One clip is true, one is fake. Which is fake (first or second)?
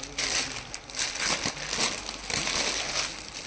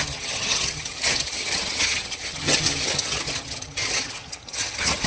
second